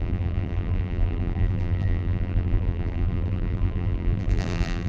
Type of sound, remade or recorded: remade